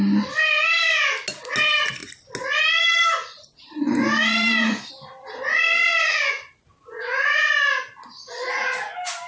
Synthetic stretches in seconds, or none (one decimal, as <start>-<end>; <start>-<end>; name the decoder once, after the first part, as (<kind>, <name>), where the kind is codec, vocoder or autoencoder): 5.9-7.2 (vocoder, BigVGAN v2)